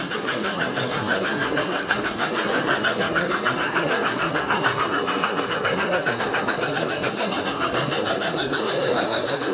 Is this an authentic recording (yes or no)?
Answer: no